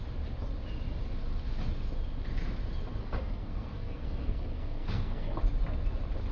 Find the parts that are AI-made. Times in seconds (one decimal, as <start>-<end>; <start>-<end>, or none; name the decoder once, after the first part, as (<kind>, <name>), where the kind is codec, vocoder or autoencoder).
3.0-5.4 (codec, SNAC)